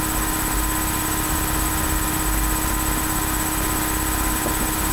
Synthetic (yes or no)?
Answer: no